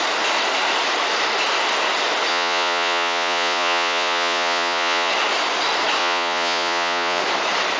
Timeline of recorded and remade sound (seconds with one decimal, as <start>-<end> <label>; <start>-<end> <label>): 0.0-2.3 recorded; 2.3-5.1 remade; 5.1-6.0 recorded; 6.0-7.2 remade; 7.2-7.8 recorded